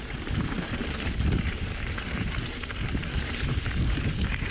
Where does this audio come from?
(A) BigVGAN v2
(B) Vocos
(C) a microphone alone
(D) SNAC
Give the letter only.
A